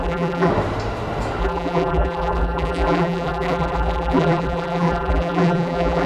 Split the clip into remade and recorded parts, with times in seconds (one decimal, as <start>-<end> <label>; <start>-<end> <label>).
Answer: 0.0-0.5 remade; 0.5-1.4 recorded; 1.4-6.1 remade